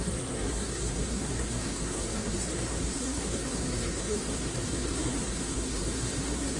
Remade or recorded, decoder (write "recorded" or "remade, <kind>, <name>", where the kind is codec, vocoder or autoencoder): remade, codec, SNAC